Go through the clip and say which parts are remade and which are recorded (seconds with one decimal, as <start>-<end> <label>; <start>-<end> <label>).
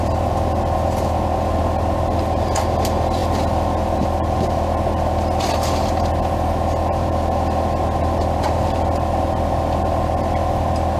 0.0-11.0 recorded